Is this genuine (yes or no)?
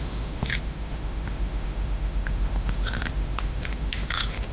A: no